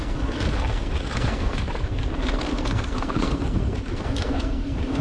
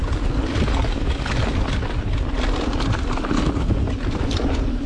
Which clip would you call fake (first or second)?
first